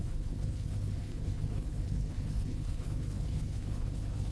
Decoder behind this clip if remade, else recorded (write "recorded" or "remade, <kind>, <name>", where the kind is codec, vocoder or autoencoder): remade, codec, HILCodec